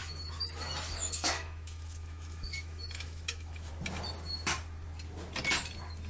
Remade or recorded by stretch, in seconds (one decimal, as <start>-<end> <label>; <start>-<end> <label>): 0.0-3.7 remade; 3.7-6.1 recorded